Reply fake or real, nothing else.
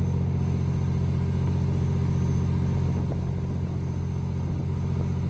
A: real